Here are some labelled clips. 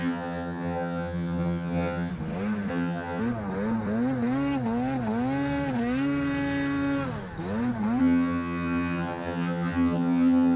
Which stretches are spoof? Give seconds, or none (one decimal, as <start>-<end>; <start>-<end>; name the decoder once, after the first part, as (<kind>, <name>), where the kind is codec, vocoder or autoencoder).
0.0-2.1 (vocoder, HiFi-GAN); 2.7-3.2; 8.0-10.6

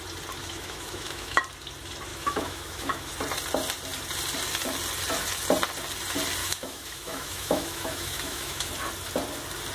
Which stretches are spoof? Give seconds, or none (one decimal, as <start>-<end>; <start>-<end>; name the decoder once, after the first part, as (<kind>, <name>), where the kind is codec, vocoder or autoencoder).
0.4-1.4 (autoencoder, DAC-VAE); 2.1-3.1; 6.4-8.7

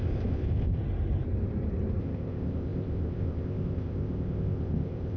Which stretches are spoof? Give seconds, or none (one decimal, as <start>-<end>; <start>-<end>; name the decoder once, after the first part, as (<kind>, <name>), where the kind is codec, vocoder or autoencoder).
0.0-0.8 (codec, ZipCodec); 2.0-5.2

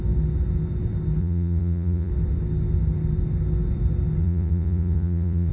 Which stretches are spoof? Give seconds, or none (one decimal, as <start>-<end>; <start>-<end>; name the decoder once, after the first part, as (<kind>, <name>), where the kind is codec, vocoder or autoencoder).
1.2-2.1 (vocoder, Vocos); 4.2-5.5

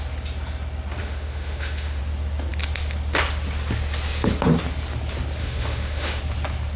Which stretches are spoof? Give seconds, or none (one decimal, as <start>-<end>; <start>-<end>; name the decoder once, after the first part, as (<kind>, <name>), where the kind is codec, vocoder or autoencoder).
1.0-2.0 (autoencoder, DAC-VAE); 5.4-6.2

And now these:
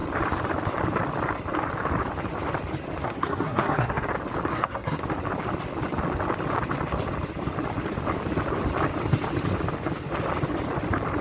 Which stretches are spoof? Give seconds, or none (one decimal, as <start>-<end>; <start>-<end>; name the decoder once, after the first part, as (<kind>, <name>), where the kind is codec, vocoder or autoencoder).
3.0-4.1 (codec, SNAC); 4.5-5.0

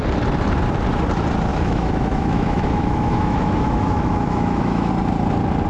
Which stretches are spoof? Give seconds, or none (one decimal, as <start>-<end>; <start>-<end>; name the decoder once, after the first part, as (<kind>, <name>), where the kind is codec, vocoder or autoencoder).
1.5-4.9 (autoencoder, DAC-VAE)